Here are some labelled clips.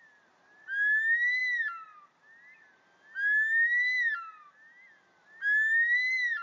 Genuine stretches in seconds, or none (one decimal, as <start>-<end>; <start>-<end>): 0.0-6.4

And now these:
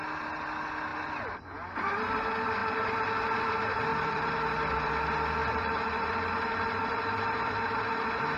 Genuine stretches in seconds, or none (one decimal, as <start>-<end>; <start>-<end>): 0.0-3.9; 4.9-5.4; 7.9-8.4

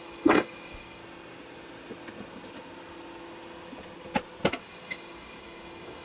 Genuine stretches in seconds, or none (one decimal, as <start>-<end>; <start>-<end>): 1.0-4.6

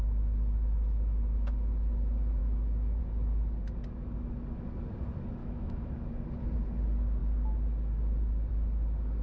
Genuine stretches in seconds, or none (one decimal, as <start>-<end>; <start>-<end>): 0.0-2.4; 3.0-5.4; 5.9-9.2

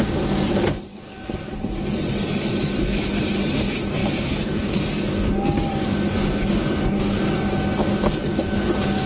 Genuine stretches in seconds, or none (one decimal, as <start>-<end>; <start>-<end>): 0.0-0.9; 1.6-4.0; 7.3-7.8; 8.7-9.1

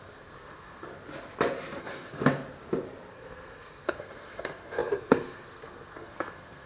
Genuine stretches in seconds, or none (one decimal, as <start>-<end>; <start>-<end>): 0.9-1.8; 2.2-3.1

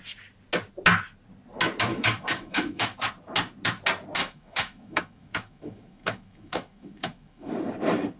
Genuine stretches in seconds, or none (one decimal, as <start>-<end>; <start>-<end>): 0.0-1.9; 3.1-4.2; 7.5-8.2